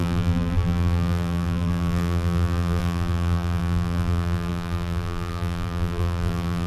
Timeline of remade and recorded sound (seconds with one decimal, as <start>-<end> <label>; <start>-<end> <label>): 0.0-6.7 remade